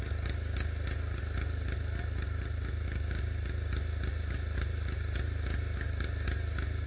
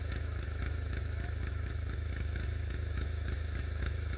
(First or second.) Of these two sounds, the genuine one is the first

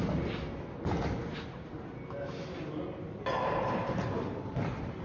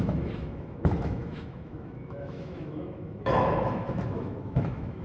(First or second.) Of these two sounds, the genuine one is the first